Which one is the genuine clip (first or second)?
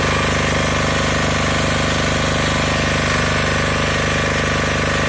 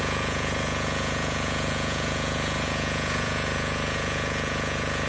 first